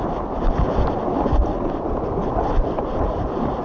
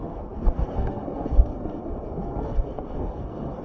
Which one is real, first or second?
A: first